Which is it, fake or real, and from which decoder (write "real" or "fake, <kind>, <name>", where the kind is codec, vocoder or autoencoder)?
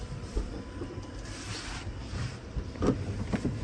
fake, vocoder, BigVGAN v2